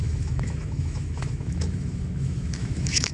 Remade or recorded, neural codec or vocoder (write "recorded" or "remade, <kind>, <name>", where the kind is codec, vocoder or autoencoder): remade, autoencoder, DAC-VAE